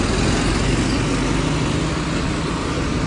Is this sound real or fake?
real